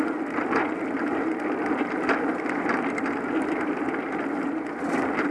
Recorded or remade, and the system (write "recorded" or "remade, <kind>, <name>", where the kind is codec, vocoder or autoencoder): recorded